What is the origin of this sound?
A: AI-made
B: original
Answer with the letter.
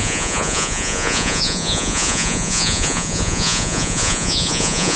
A